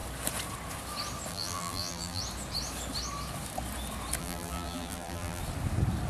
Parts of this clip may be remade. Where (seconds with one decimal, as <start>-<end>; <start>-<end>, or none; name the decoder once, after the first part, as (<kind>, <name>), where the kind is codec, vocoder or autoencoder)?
1.3-2.2 (vocoder, BigVGAN v2); 4.2-5.4